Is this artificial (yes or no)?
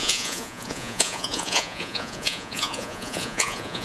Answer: yes